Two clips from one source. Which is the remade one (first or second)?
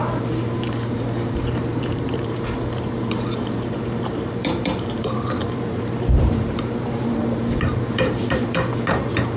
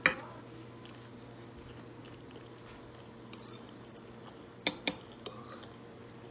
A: first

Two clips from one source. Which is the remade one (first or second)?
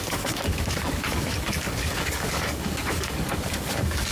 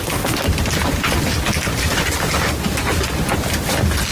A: first